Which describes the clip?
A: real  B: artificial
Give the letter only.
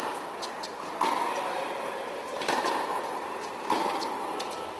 A